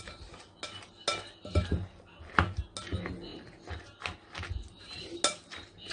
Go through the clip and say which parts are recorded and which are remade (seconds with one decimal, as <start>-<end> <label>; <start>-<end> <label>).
0.0-1.1 recorded; 1.1-1.7 remade; 1.7-3.3 recorded; 3.3-3.9 remade; 3.9-5.9 recorded